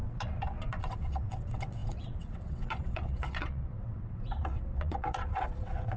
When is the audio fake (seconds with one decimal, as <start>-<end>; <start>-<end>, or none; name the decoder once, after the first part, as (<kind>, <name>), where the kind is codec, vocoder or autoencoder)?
0.0-6.0 (vocoder, WaveNeXt)